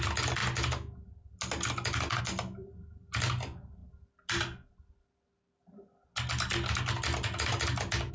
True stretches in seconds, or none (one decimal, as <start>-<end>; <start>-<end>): 0.0-8.1